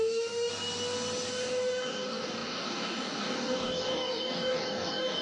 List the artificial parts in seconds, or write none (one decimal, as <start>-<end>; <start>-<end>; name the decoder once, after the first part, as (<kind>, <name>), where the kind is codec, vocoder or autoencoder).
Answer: 0.0-0.5 (codec, DAC); 1.3-5.2